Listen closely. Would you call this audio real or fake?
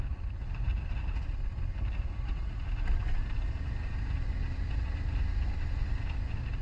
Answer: real